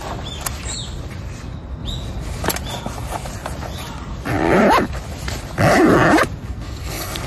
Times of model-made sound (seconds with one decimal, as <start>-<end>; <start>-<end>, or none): 6.4-7.3